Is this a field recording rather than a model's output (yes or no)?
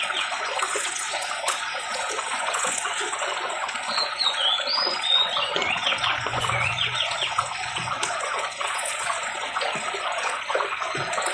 no